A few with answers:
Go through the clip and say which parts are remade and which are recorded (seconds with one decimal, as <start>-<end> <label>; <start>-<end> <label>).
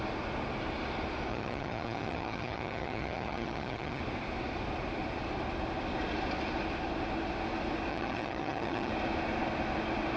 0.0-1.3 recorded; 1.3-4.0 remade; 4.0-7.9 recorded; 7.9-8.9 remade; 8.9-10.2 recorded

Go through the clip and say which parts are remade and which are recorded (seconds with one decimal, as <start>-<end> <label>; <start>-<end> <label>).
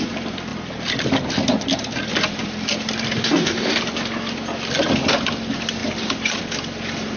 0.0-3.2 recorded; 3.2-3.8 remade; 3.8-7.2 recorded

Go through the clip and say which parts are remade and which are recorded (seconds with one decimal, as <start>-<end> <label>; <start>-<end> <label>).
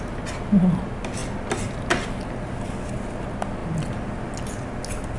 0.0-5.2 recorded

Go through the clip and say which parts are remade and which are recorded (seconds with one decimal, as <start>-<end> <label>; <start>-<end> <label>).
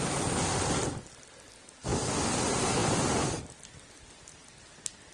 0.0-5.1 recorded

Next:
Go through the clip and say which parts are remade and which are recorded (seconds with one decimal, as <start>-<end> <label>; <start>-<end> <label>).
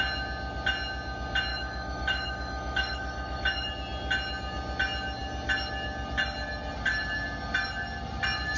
0.0-1.5 recorded; 1.5-3.7 remade; 3.7-8.6 recorded